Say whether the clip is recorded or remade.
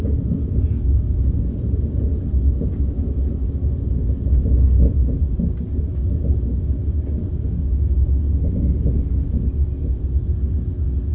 recorded